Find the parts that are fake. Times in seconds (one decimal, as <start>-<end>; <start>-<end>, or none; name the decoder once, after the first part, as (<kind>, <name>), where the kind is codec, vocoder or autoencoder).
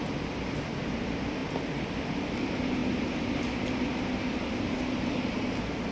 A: 0.0-5.9 (vocoder, BigVGAN v2)